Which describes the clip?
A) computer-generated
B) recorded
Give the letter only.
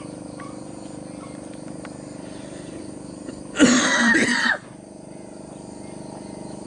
B